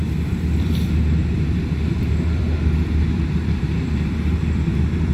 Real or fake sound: fake